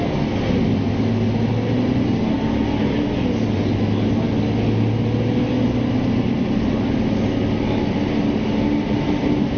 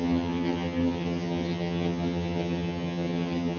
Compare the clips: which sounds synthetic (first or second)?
second